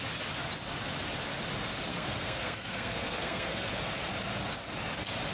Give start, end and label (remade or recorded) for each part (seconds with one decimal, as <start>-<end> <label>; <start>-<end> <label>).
0.0-1.9 recorded; 1.9-3.7 remade; 3.7-5.3 recorded